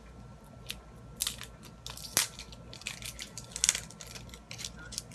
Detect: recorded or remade recorded